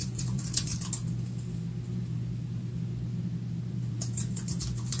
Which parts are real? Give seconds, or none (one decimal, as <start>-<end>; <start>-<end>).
0.7-3.7